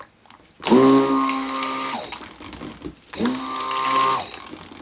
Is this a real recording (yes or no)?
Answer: yes